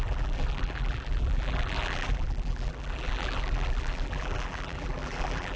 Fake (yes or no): yes